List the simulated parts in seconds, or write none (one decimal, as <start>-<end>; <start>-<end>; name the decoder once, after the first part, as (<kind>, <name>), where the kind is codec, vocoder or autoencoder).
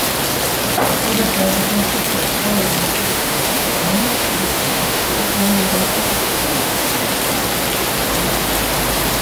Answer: 3.0-6.9 (autoencoder, DAC-VAE)